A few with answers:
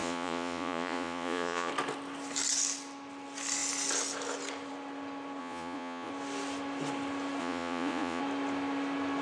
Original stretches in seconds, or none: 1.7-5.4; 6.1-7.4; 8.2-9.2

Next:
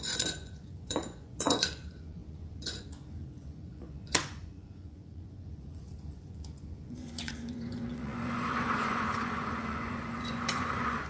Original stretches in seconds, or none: none

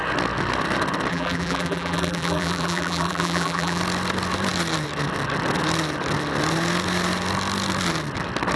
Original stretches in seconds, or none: 0.0-1.1; 3.8-8.6

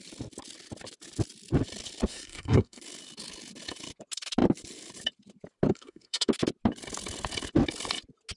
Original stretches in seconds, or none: 0.0-2.1; 2.8-5.7; 6.3-8.4